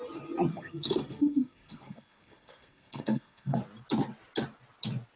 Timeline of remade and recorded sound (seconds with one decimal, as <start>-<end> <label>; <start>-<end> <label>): 0.0-0.5 recorded; 0.5-3.6 remade; 3.6-5.2 recorded

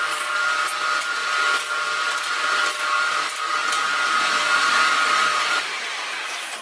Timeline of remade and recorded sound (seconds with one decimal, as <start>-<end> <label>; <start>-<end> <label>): 0.0-6.6 recorded

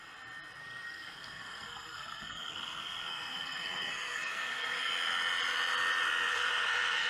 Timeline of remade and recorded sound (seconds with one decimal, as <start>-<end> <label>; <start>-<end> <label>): 0.0-0.6 recorded; 0.6-4.9 remade; 4.9-6.3 recorded; 6.3-7.1 remade

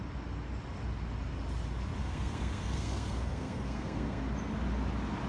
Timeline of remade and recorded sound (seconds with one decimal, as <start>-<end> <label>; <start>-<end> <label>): 0.0-2.0 recorded; 2.0-4.2 remade; 4.2-5.3 recorded